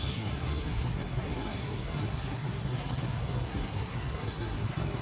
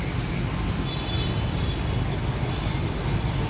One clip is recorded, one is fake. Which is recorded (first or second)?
second